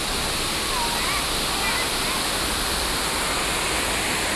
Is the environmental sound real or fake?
real